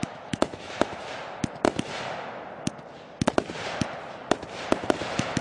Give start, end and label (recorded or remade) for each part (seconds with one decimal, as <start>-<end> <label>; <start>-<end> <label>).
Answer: 0.0-1.0 remade; 1.0-5.4 recorded